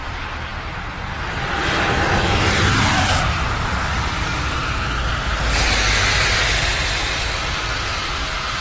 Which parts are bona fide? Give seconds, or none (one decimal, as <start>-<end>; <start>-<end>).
0.0-8.6